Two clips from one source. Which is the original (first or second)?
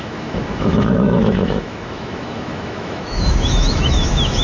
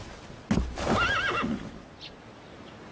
second